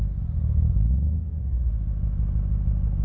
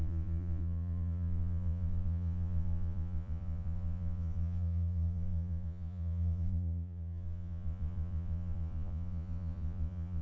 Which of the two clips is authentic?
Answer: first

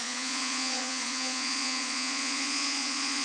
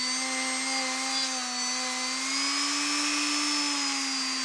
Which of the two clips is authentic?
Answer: second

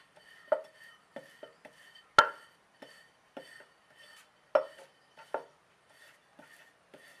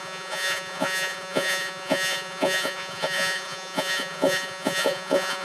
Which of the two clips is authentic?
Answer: first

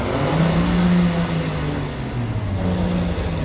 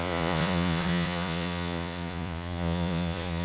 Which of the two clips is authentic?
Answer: first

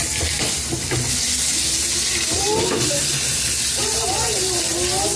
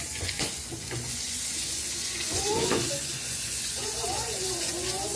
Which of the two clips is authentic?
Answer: first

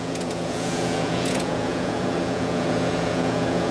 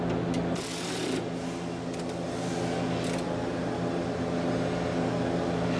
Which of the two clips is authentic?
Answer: second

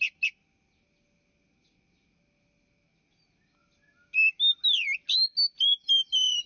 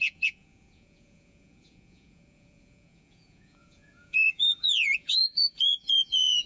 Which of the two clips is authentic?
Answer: first